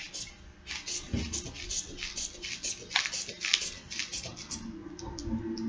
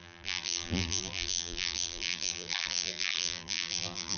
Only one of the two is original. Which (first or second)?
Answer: first